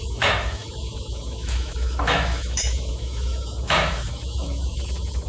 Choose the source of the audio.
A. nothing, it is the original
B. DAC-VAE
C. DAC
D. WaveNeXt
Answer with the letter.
B